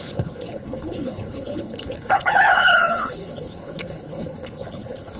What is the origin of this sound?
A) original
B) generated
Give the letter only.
B